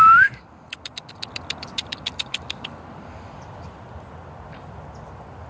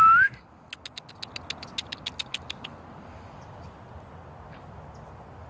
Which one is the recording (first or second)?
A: second